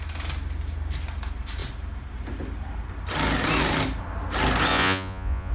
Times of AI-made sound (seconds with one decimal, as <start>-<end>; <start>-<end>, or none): 4.7-5.5